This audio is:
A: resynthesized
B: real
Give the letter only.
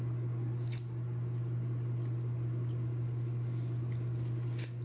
B